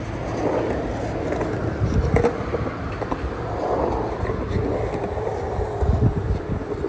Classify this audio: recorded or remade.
recorded